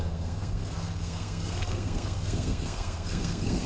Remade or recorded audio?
remade